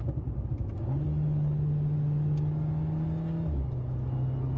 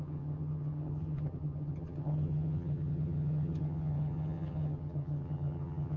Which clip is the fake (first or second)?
second